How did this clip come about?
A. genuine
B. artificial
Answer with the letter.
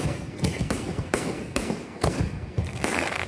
B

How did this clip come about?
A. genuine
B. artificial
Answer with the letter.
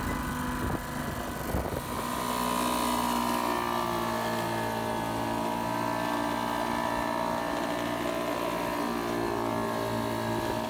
A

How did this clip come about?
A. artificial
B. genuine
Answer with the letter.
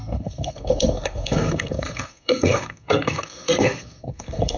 A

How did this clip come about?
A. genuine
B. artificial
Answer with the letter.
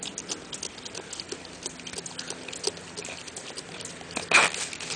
A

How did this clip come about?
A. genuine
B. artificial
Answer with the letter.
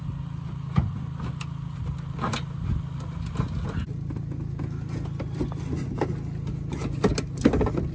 A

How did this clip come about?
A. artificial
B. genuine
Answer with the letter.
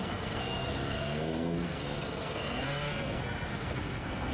A